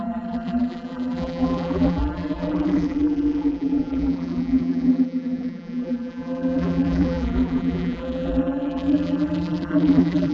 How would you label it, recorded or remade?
remade